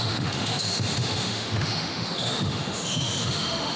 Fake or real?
fake